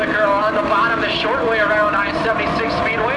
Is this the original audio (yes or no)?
yes